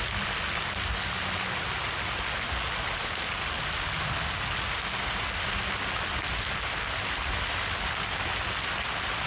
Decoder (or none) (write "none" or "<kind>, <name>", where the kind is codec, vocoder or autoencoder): none